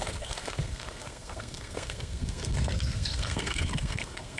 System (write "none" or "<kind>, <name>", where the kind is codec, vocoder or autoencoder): codec, SNAC